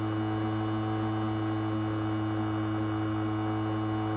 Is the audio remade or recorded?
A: recorded